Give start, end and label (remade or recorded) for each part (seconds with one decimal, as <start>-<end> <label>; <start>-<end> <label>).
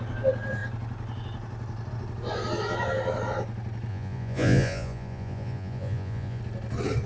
0.0-3.9 recorded; 3.9-6.4 remade; 6.4-7.1 recorded